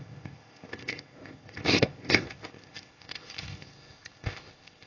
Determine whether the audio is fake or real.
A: fake